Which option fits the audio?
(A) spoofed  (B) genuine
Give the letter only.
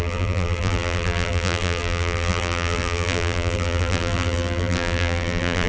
A